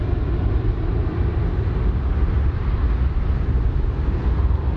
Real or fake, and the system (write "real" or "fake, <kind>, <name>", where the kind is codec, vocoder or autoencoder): real